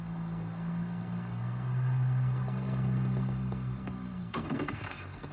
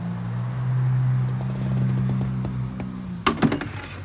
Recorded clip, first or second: second